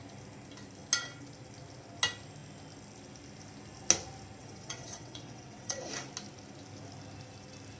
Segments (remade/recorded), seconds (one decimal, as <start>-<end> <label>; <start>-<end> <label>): 0.0-4.4 recorded; 4.4-5.9 remade; 5.9-7.8 recorded